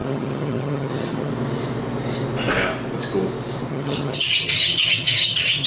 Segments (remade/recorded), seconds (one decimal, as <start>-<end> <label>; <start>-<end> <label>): 0.0-1.3 remade; 1.3-3.7 recorded; 3.7-5.7 remade